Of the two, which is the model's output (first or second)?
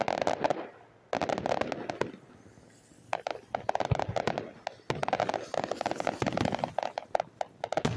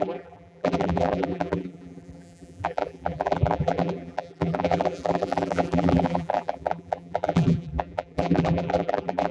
second